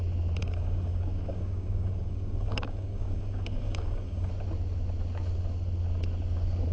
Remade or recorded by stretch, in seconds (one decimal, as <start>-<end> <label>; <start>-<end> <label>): 0.0-0.4 recorded; 0.4-4.3 remade; 4.3-6.7 recorded